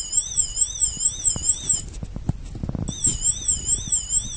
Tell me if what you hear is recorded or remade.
recorded